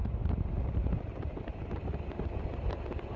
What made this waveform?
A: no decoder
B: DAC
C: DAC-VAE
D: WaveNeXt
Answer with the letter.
A